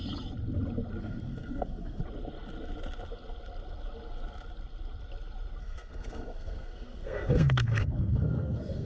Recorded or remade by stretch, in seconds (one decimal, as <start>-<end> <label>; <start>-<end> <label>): 0.0-1.0 recorded; 1.0-2.0 remade; 2.0-5.6 recorded; 5.6-8.8 remade